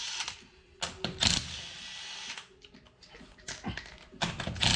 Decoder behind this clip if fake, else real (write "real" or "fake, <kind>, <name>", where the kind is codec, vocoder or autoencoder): real